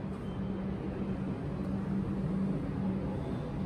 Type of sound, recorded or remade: recorded